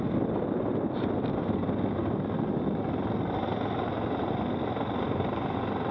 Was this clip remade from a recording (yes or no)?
no